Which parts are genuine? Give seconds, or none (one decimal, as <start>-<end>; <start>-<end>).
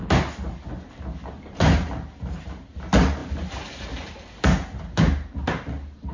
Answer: 0.0-6.1